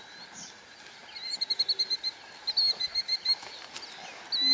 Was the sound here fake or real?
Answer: real